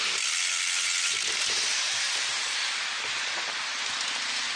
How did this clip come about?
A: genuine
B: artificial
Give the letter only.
A